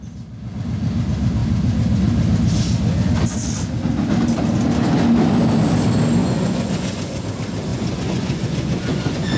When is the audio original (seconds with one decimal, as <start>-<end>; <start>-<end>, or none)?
0.0-6.2; 7.2-7.7